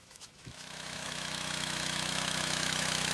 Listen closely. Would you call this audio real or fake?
fake